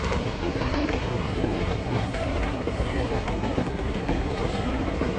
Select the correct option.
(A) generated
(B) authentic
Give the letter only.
A